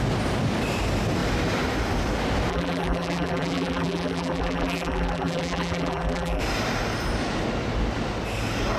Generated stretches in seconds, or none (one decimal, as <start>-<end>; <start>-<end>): 2.5-6.4